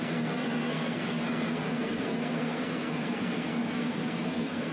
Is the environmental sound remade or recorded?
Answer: remade